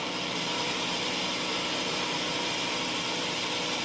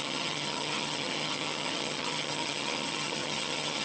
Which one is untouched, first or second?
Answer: first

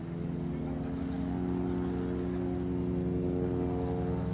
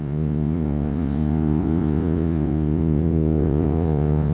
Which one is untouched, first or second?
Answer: first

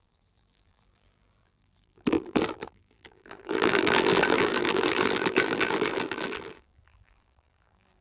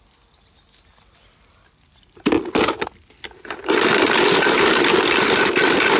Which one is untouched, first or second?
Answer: second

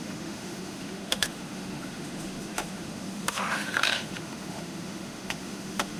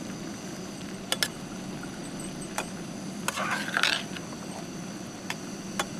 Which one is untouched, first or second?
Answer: second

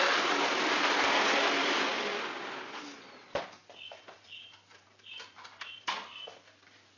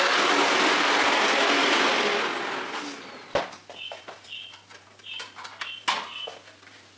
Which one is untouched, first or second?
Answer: second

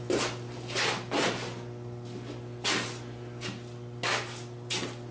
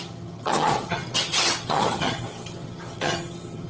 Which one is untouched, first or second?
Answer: first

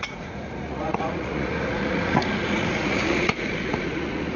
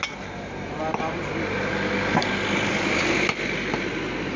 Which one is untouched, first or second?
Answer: second